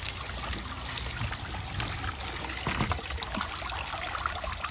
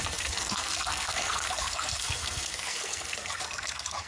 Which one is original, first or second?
first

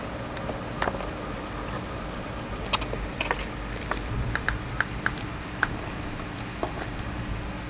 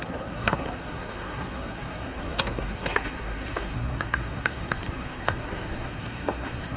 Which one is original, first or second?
first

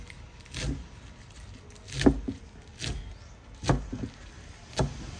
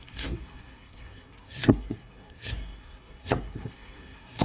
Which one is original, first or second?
first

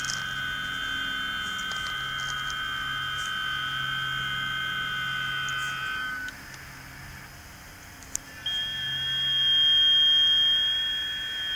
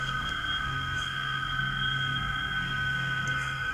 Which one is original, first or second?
first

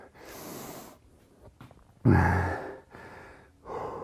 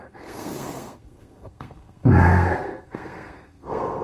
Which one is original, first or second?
first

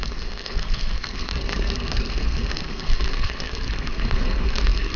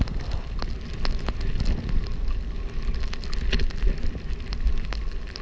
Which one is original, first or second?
second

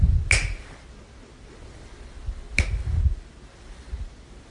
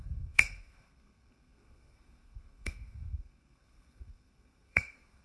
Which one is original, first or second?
first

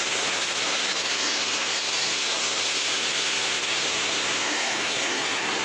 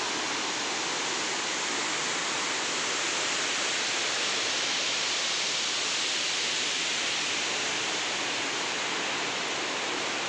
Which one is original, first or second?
second